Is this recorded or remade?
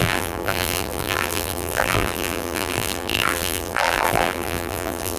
remade